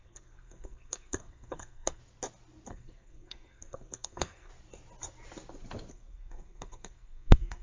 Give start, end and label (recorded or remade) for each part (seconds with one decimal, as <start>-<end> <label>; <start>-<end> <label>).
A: 0.0-2.0 remade; 2.0-2.7 recorded; 2.7-4.5 remade; 4.5-5.9 recorded; 5.9-7.6 remade